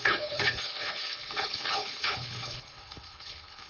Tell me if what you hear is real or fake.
fake